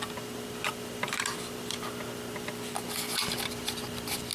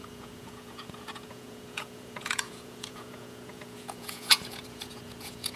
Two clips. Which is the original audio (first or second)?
first